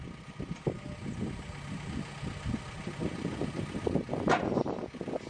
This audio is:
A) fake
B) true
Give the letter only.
B